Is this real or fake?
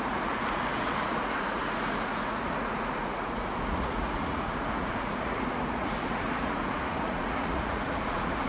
fake